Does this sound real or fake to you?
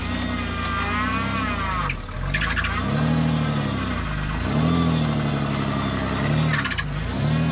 real